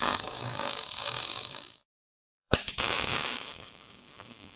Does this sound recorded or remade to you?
remade